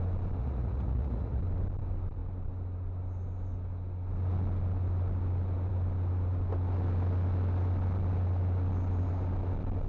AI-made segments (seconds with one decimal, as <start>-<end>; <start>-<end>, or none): 0.4-1.4